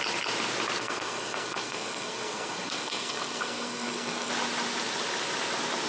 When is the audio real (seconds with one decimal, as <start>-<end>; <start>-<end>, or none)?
0.0-0.8; 4.3-5.9